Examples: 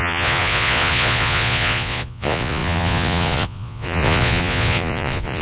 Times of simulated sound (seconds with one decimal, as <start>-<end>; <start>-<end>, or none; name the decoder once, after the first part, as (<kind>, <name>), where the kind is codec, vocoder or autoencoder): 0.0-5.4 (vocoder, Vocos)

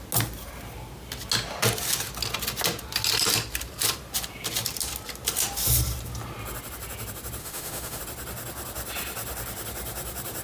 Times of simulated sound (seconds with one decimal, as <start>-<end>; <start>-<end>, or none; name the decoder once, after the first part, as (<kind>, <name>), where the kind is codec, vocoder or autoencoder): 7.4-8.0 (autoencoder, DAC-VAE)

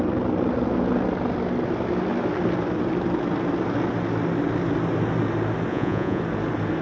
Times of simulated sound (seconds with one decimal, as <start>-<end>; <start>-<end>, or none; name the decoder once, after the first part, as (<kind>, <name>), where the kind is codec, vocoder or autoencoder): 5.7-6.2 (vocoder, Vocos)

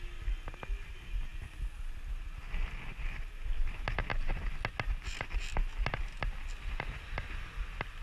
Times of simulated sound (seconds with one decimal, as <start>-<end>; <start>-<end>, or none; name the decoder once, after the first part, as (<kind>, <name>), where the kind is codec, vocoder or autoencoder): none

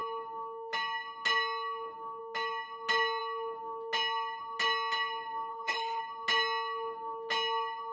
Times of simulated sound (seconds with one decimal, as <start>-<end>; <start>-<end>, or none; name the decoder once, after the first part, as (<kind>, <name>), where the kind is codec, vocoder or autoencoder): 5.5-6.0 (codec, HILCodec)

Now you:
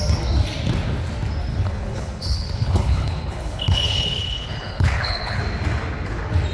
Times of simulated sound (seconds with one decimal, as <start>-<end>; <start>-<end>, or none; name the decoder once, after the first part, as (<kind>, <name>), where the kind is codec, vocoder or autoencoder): 1.5-5.4 (codec, HILCodec)